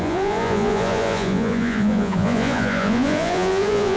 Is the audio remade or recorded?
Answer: remade